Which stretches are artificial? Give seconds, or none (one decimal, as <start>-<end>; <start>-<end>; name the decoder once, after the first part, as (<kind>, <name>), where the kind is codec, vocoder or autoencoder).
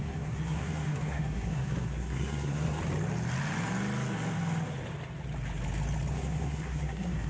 0.0-2.8 (codec, SNAC); 6.1-7.3